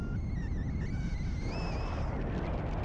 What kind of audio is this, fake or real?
real